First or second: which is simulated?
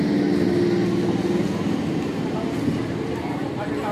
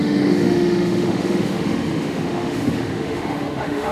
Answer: second